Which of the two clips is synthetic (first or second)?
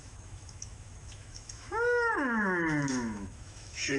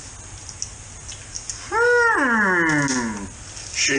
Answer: first